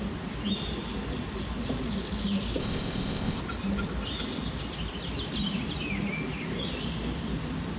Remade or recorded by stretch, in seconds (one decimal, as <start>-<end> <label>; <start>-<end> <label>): 0.0-2.6 recorded; 2.6-3.4 remade; 3.4-7.8 recorded